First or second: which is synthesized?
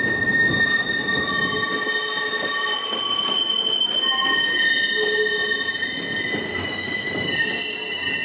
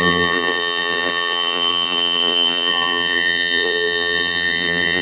second